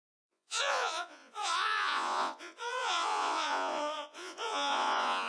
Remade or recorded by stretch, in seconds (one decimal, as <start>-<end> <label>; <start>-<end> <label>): 0.0-5.3 remade